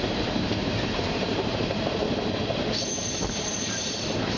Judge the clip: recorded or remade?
remade